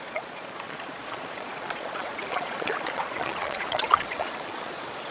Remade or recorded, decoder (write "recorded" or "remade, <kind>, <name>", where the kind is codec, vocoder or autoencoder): remade, vocoder, Vocos